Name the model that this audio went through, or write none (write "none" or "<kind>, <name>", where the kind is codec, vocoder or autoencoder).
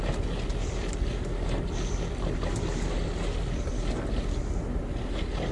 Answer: none